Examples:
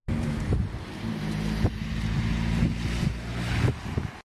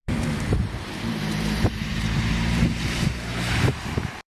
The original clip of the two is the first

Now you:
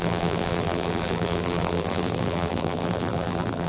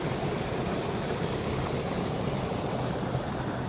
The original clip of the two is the second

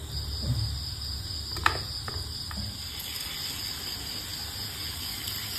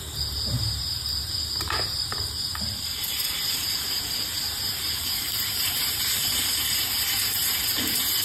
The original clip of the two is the first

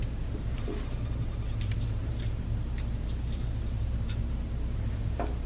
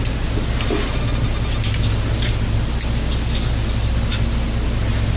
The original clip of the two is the second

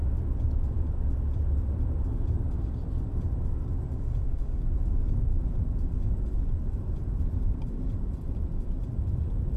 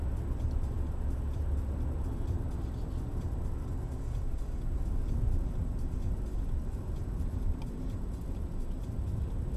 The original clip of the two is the second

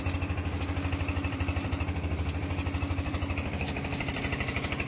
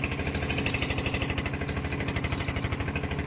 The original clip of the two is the second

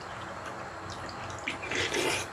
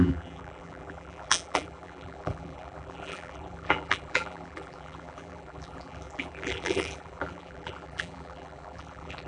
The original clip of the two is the first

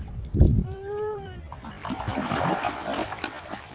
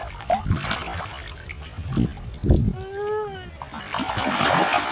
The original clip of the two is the second